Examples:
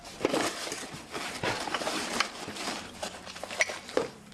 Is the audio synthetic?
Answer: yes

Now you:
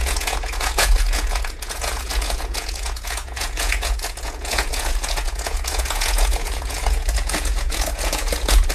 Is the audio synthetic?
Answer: yes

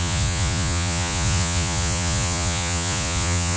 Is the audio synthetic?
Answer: yes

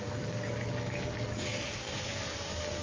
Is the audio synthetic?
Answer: yes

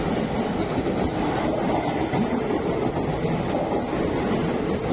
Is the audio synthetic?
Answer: no